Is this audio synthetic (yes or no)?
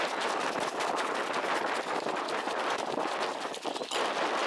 no